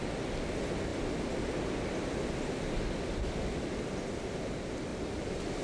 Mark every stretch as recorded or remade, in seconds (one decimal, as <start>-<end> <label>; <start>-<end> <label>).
0.0-5.6 recorded